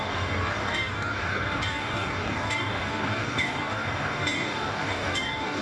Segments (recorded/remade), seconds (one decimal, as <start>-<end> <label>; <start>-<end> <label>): 0.0-5.6 remade